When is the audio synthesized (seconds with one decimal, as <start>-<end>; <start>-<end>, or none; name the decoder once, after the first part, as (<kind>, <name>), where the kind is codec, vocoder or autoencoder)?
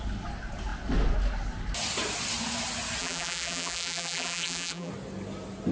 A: 3.0-4.9 (vocoder, BigVGAN v2)